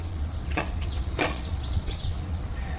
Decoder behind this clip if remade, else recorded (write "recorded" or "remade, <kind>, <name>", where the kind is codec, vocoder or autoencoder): remade, vocoder, Vocos